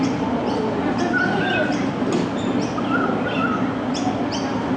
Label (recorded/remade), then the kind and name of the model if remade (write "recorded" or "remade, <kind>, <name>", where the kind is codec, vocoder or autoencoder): recorded